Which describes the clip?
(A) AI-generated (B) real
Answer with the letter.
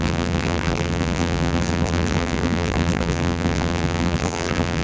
A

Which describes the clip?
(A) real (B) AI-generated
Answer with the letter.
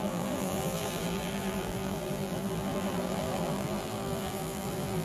B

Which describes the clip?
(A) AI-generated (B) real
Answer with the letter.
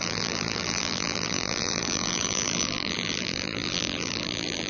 A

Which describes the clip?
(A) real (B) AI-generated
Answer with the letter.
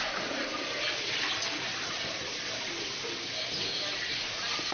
B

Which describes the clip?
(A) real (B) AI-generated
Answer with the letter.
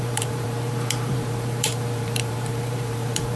B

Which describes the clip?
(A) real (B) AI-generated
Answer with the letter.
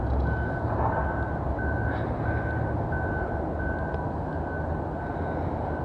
A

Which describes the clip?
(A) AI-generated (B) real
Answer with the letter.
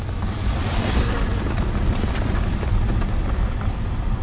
A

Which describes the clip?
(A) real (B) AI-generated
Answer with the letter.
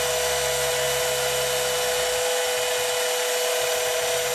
A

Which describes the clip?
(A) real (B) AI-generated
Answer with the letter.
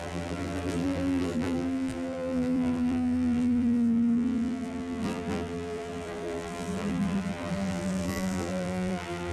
B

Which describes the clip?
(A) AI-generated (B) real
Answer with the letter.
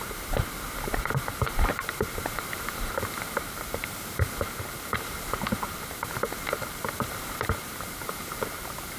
A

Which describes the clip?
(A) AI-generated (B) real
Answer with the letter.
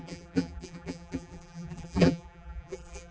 A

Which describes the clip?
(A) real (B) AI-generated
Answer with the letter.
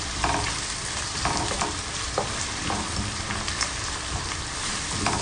B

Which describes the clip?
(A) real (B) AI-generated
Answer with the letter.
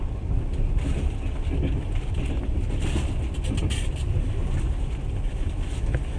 A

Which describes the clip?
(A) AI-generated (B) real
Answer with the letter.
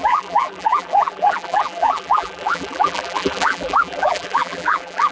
A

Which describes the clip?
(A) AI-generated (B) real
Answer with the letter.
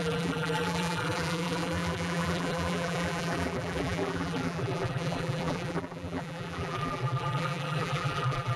A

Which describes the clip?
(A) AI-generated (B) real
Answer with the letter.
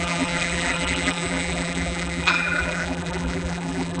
A